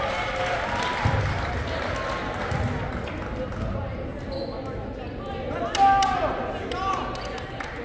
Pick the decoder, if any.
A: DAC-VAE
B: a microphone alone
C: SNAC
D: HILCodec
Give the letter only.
B